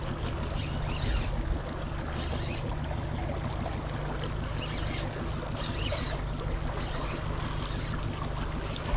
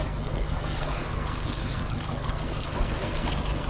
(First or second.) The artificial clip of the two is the second